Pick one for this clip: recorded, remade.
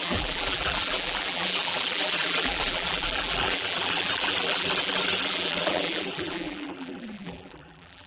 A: remade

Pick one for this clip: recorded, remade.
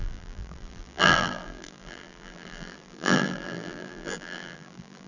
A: remade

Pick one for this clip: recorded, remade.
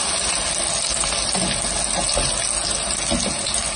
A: recorded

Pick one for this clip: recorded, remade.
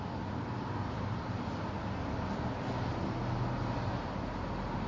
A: recorded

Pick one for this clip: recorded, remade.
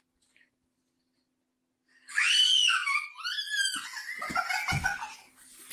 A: recorded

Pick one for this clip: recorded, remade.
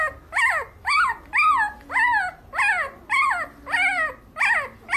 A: recorded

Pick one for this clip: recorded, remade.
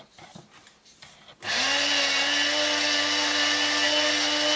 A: recorded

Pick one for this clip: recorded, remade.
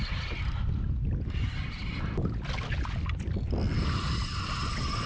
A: recorded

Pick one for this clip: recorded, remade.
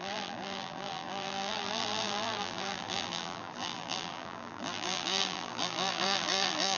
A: remade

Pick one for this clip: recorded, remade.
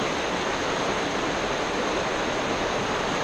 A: recorded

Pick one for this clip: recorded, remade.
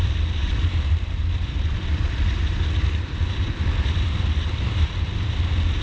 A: remade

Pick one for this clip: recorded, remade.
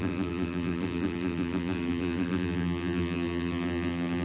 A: remade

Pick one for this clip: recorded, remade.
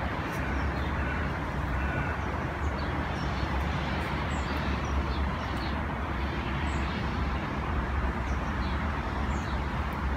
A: remade